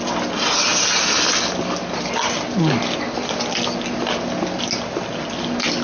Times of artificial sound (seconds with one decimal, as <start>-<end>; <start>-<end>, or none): none